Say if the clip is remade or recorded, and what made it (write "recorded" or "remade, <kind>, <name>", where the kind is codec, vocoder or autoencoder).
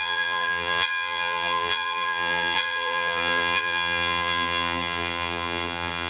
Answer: remade, vocoder, BigVGAN v2